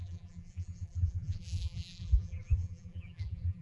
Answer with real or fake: fake